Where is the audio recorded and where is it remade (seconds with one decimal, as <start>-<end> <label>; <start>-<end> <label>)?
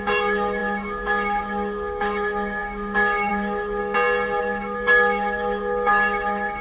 0.0-3.8 remade; 3.8-4.4 recorded; 4.4-6.6 remade